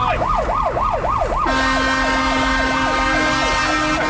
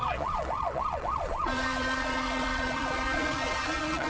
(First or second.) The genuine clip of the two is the first